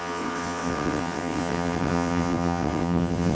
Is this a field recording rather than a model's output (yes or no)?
no